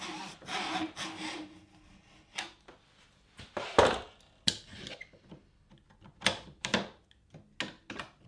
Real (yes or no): yes